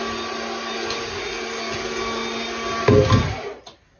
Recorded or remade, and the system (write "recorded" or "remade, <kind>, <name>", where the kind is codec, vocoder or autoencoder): recorded